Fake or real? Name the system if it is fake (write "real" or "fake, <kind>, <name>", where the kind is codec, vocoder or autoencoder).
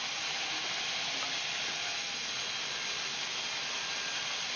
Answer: real